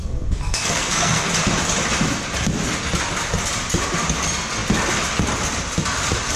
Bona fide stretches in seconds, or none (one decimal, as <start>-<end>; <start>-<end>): 1.3-6.4